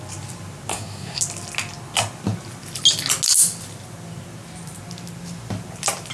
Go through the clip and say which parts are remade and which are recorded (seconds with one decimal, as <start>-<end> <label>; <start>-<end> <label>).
0.0-0.7 recorded; 0.7-1.2 remade; 1.2-6.1 recorded